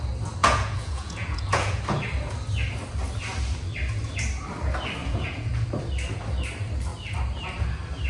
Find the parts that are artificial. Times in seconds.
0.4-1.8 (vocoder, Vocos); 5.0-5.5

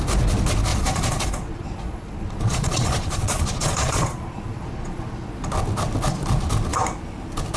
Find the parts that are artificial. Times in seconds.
0.7-5.3 (vocoder, Vocos)

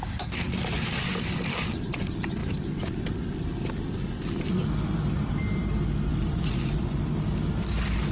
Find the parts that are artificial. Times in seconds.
6.1-7.0 (vocoder, Vocos)

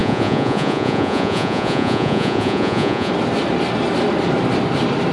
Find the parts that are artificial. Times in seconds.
0.0-3.1 (vocoder, Vocos)

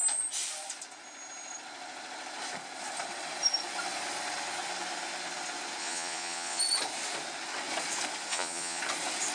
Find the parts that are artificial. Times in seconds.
5.8-6.6 (vocoder, Vocos); 8.3-8.8

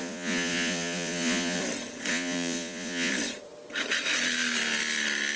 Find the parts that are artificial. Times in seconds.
0.0-1.6 (vocoder, Vocos); 2.1-3.1

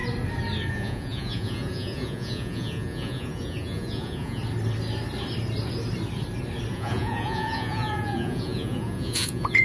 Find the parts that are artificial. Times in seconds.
0.7-4.4 (vocoder, Vocos); 6.7-9.6

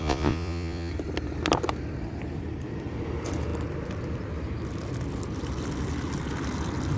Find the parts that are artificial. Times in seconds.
0.0-0.9 (vocoder, Vocos)